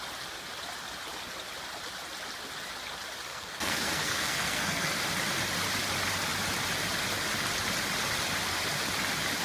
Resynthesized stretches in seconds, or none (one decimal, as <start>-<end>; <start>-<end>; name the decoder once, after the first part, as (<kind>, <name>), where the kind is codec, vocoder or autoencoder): 3.3-4.9 (codec, SNAC)